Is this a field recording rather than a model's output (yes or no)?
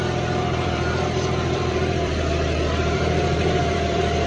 no